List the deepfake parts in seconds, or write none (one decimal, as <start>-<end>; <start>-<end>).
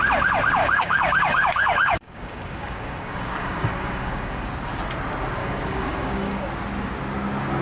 0.6-4.5; 5.4-6.5